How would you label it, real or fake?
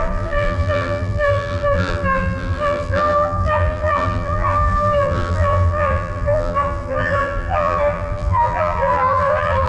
fake